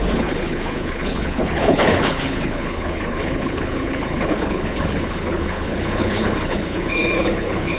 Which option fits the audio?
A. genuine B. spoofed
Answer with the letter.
B